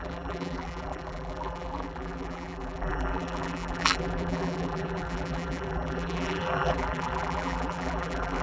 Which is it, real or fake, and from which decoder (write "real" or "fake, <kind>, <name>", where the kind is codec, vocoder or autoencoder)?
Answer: fake, vocoder, BigVGAN v2